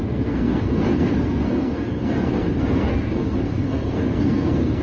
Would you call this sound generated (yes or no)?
yes